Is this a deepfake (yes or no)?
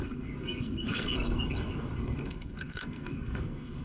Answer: yes